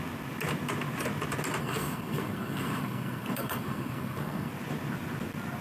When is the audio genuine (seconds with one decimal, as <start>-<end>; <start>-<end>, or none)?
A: 0.0-1.6; 4.5-5.6